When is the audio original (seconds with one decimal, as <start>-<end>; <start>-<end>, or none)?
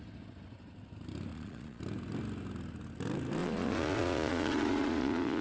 0.0-1.3; 1.8-3.4